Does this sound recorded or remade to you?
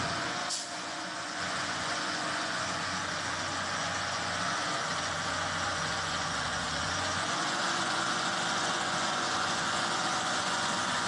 remade